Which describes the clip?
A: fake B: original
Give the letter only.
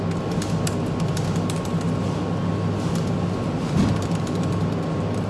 B